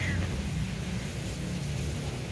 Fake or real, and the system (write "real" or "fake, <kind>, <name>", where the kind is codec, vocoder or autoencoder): real